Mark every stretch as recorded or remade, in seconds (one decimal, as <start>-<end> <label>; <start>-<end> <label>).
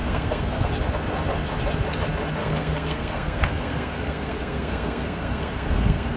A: 0.0-0.7 remade; 0.7-2.4 recorded; 2.4-6.2 remade